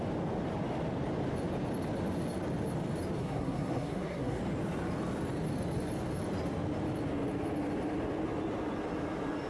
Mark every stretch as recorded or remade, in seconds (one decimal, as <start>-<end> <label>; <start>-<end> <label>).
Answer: 0.0-3.2 recorded; 3.2-4.4 remade; 4.4-9.5 recorded